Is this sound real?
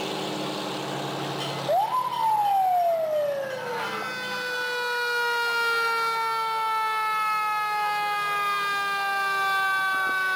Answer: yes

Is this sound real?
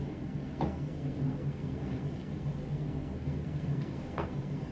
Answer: no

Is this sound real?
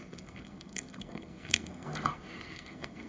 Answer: no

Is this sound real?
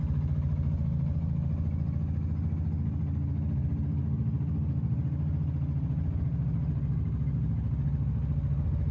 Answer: yes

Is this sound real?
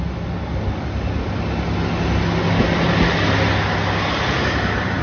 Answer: yes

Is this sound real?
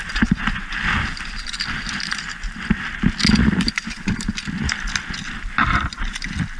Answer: yes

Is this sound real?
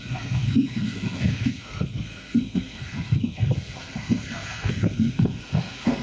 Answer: no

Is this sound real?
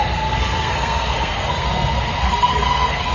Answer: no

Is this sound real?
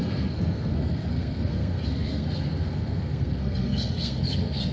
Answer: no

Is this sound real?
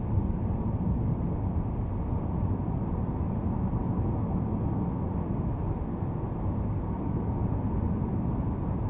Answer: yes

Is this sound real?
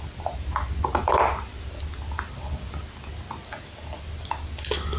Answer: yes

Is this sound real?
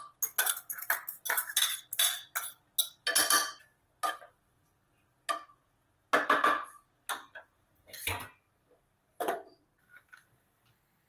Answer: yes